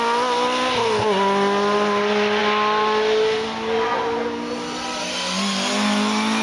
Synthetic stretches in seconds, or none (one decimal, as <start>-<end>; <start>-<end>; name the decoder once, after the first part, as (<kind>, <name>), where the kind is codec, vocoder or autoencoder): none